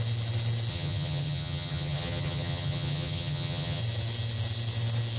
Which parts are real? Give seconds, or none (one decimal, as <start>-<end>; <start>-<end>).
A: 0.0-0.7; 3.8-5.2